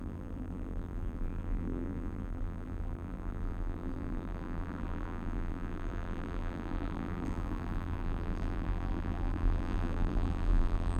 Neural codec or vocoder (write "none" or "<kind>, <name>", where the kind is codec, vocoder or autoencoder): vocoder, BigVGAN v2